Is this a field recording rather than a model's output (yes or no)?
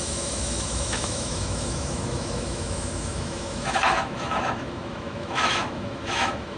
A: no